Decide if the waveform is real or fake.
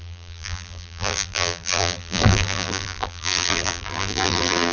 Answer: fake